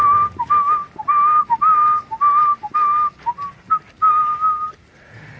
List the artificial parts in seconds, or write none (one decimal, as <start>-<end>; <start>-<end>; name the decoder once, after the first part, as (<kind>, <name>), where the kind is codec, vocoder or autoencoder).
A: none